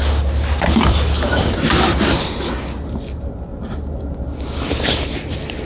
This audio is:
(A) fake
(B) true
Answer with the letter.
B